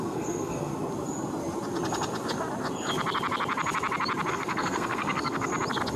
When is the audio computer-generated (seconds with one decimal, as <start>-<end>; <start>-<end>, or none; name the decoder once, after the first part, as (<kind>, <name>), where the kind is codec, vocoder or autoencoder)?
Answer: 0.0-0.7 (codec, SNAC); 4.3-5.5